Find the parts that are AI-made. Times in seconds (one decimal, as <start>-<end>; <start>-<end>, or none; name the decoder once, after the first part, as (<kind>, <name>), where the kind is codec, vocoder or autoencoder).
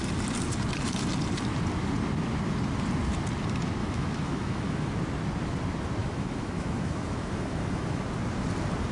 3.8-4.9 (autoencoder, DAC-VAE); 6.0-8.0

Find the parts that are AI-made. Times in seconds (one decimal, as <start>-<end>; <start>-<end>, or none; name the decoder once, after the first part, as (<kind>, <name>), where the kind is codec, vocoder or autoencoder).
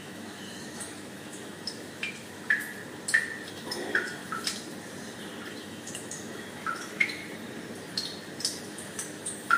0.0-2.8 (autoencoder, DAC-VAE); 3.5-4.2; 5.5-7.2; 8.6-9.6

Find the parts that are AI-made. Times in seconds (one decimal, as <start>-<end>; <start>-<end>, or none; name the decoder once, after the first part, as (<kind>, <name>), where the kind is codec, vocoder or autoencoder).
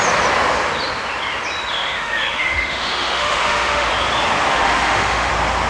1.7-3.9 (autoencoder, DAC-VAE); 4.5-5.3